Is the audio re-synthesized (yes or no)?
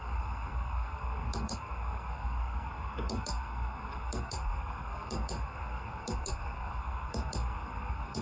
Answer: yes